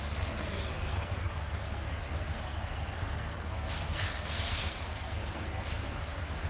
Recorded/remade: remade